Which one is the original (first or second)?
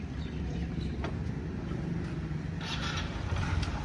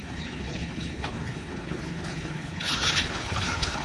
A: first